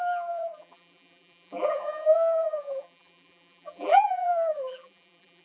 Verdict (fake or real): fake